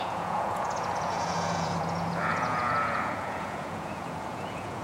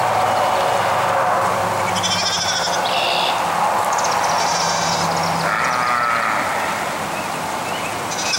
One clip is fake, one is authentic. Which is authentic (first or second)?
second